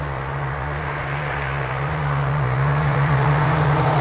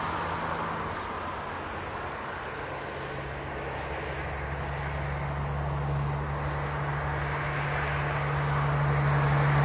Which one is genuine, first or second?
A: second